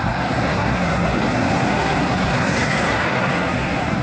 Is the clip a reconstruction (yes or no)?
yes